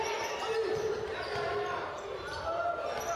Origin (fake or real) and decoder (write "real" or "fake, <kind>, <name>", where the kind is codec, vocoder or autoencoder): real